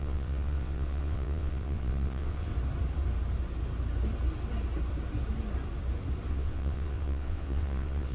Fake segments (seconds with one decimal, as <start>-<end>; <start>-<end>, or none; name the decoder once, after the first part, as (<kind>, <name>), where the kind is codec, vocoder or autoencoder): 0.0-2.5 (vocoder, WaveNeXt); 6.3-8.1

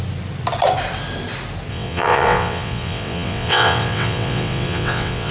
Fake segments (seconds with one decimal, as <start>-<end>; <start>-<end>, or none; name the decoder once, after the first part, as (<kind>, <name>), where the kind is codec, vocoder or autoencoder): 1.7-5.3 (vocoder, WaveNeXt)

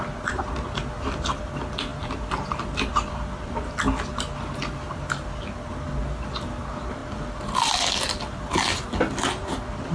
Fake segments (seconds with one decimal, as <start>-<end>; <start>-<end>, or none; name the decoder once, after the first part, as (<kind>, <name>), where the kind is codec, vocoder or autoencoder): none

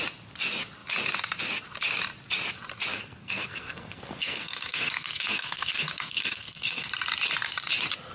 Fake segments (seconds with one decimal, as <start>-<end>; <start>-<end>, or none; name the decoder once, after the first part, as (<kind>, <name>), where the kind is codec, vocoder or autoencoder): 2.9-6.9 (codec, SNAC)

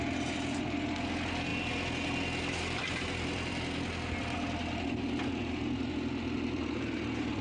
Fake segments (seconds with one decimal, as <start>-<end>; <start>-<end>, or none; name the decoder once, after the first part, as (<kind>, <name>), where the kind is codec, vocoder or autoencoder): none

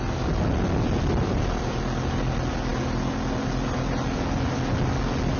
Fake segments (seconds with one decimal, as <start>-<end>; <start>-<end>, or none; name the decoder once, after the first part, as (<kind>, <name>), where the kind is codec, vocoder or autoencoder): none

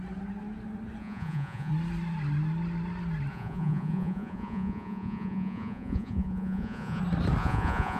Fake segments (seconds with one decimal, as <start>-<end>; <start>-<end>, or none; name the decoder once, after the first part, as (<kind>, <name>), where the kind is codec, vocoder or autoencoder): 1.0-1.7 (vocoder, Vocos); 3.3-7.0; 7.4-8.0

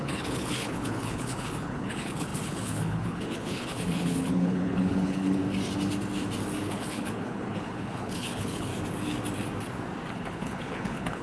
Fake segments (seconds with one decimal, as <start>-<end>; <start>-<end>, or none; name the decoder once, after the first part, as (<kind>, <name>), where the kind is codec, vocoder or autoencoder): 0.0-5.4 (codec, HILCodec); 6.6-8.7; 10.1-11.2